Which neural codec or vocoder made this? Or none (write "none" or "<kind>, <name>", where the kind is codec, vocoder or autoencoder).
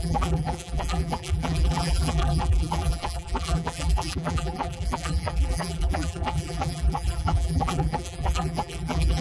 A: vocoder, BigVGAN v2